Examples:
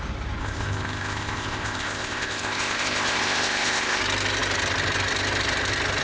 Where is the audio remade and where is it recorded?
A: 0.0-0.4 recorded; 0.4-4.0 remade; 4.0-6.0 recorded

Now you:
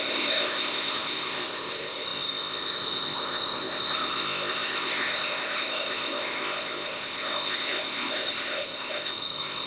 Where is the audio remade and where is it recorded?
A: 0.0-9.7 remade

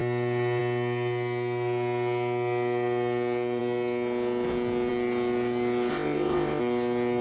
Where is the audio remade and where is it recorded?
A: 0.0-5.9 recorded; 5.9-6.6 remade; 6.6-7.2 recorded

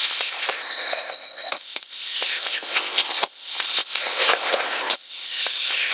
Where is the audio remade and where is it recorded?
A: 0.0-5.9 remade

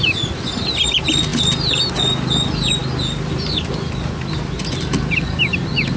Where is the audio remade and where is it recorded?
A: 0.0-6.0 recorded

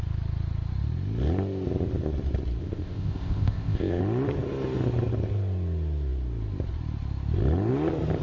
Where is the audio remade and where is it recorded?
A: 0.0-2.6 recorded; 2.6-4.0 remade; 4.0-8.2 recorded